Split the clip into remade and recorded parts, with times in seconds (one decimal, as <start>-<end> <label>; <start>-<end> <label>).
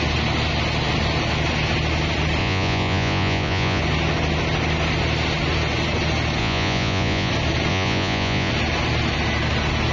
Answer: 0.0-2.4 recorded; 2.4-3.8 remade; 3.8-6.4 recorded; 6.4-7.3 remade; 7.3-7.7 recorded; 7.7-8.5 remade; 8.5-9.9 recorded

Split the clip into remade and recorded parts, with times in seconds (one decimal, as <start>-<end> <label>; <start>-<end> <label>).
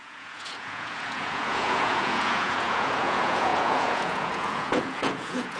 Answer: 0.0-5.6 remade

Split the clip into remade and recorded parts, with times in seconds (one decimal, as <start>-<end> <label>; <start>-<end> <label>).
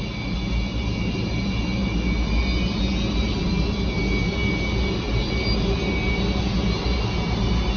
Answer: 0.0-7.8 recorded